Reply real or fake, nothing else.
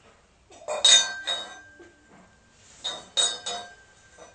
real